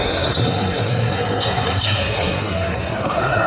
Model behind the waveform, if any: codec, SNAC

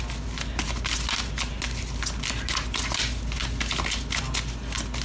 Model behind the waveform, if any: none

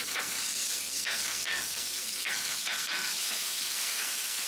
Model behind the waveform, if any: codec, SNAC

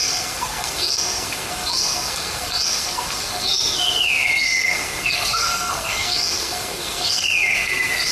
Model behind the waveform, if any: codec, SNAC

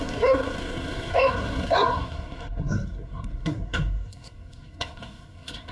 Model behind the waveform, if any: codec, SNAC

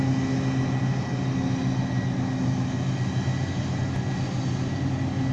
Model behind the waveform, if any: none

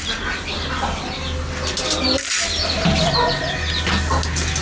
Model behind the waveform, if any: none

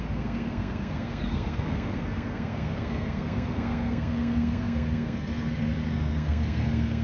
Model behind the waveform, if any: codec, SNAC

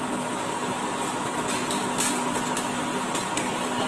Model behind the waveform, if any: none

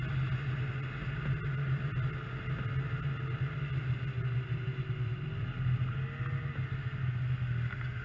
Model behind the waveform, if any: none